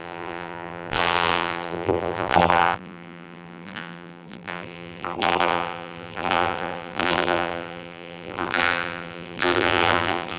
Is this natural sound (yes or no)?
no